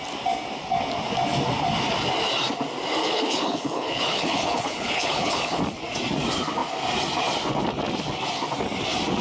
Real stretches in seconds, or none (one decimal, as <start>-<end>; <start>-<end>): 0.0-3.0; 5.6-9.2